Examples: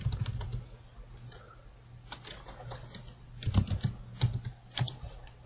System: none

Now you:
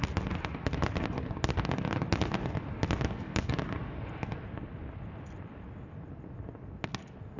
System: none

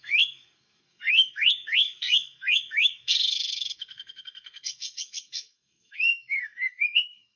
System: codec, SNAC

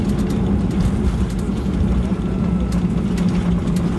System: none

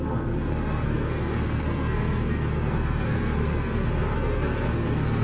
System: codec, SNAC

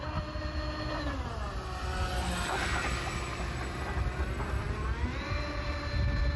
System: none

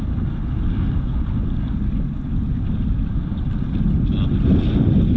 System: none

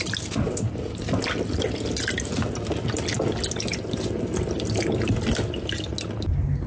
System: none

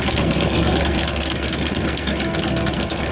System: codec, SNAC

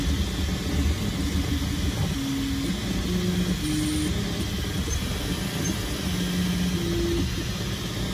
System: none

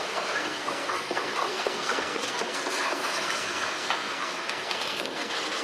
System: codec, SNAC